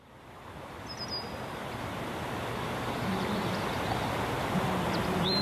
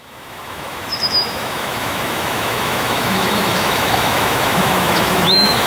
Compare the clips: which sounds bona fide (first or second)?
first